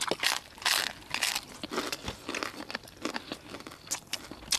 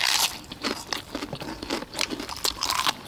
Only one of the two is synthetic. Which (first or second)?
second